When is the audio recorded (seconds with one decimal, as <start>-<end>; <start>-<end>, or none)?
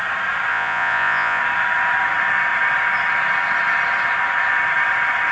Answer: 0.0-0.5; 1.4-5.3